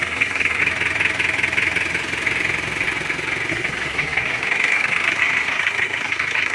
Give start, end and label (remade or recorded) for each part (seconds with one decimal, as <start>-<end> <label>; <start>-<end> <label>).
0.0-0.6 remade; 0.6-3.5 recorded; 3.5-6.5 remade